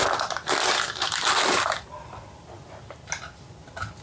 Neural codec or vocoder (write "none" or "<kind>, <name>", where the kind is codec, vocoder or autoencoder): none